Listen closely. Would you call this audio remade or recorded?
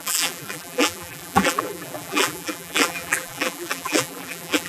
remade